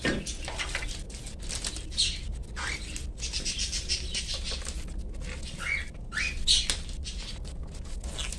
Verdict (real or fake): real